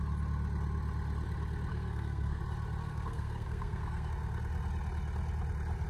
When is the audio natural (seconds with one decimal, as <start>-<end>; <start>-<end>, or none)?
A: 0.0-1.7; 2.4-2.8; 4.1-5.9